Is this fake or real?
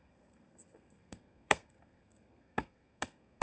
fake